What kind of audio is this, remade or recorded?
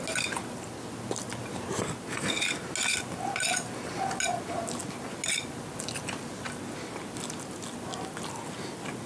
recorded